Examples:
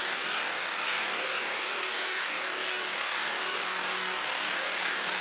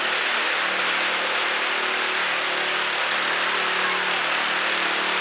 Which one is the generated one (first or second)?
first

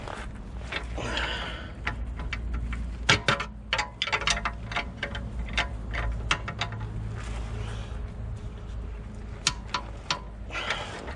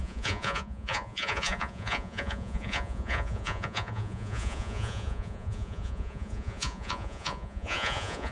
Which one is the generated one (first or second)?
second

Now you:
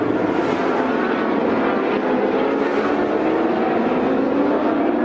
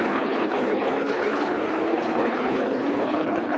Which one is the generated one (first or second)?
second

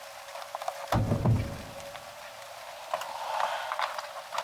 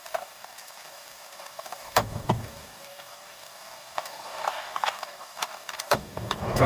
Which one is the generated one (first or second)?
second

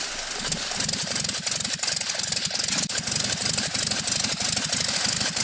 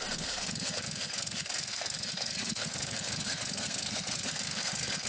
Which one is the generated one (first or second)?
second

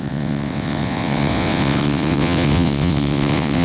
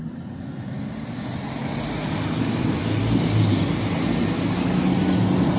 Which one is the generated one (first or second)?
first